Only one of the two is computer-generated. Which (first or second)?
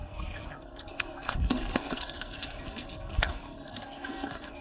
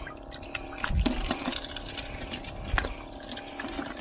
first